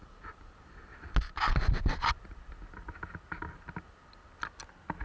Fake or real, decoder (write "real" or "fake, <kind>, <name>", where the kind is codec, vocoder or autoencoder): real